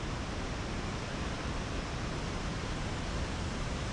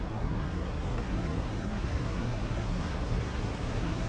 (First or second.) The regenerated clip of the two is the second